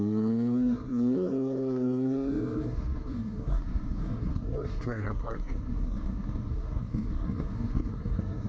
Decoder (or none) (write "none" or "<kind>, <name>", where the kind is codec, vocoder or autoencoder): codec, SNAC